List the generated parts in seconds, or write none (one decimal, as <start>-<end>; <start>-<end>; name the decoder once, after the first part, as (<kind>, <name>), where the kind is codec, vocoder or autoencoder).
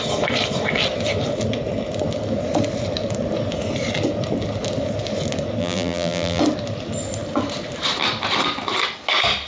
5.6-6.4 (vocoder, BigVGAN v2)